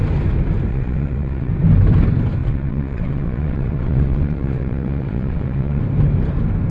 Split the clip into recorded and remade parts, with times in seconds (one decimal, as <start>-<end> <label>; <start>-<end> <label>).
0.0-0.7 recorded; 0.7-1.5 remade; 1.5-2.4 recorded; 2.4-5.8 remade; 5.8-6.7 recorded